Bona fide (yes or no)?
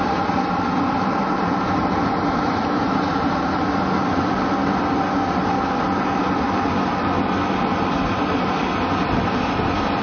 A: yes